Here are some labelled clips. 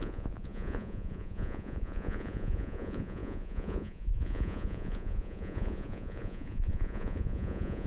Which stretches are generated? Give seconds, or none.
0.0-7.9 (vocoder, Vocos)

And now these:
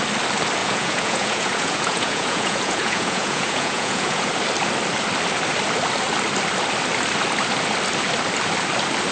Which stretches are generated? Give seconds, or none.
0.6-4.3 (vocoder, Vocos)

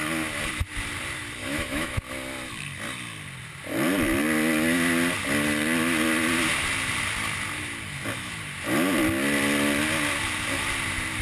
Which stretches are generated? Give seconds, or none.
1.4-2.0 (autoencoder, DAC-VAE)